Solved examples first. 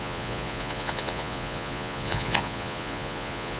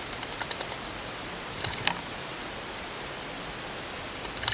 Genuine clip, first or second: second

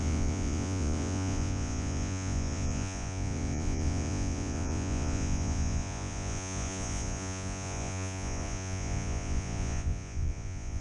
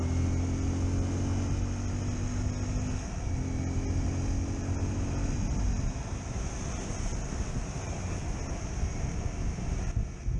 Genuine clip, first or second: second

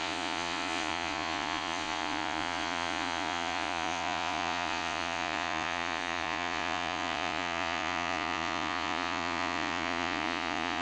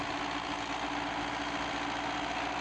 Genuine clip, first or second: second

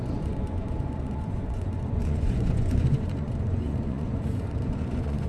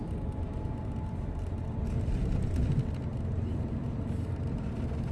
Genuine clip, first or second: second